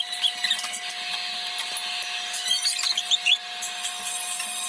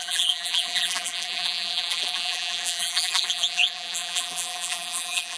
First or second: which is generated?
second